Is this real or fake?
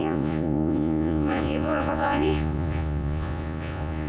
fake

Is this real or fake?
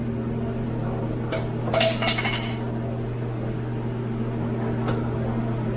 real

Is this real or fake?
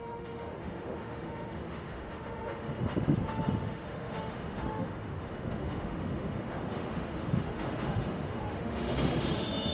fake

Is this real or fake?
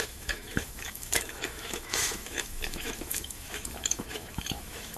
fake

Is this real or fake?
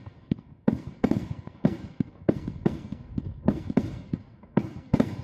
fake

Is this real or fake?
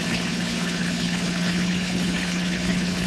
fake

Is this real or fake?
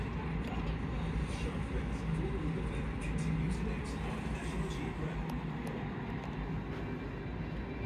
real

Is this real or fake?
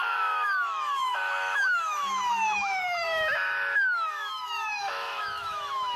fake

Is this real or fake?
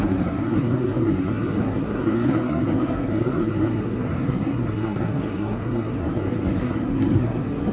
fake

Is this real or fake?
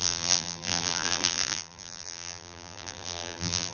fake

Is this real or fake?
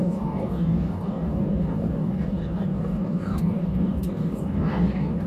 fake